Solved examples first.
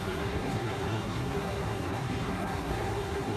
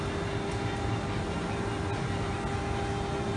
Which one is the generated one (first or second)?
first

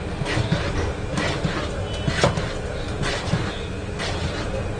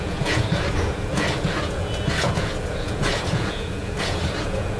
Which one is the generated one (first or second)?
second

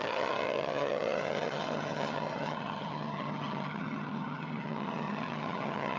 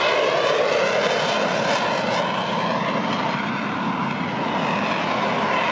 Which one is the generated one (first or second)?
first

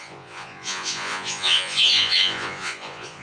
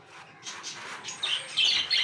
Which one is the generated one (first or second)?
first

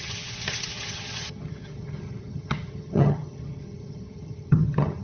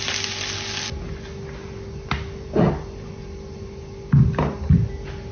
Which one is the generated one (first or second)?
first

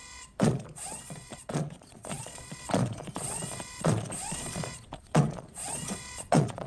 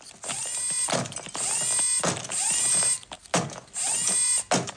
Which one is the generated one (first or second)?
first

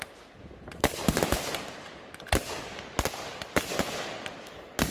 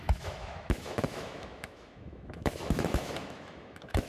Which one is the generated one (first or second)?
second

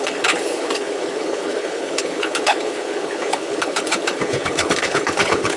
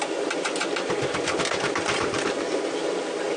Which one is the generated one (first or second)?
first